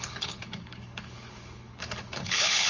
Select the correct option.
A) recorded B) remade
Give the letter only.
B